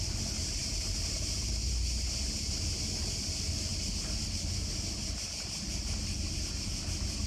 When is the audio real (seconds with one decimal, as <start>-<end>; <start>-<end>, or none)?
0.0-0.6; 1.7-7.3